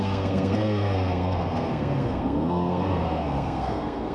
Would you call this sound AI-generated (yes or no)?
yes